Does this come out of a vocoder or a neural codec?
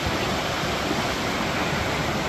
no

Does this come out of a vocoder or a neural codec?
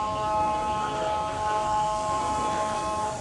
yes